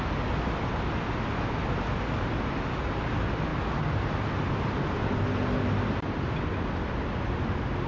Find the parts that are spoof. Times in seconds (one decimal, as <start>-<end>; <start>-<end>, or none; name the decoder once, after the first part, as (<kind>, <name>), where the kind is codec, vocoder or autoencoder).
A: none